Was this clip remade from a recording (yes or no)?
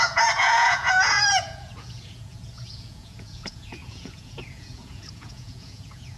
yes